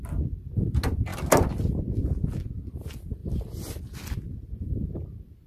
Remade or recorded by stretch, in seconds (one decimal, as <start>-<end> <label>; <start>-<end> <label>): 0.0-5.5 recorded